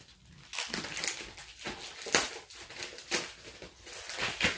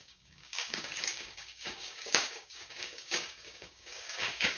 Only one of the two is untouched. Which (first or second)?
first